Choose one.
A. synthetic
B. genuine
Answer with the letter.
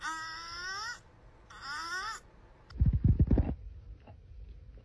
B